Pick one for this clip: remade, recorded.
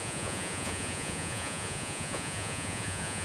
remade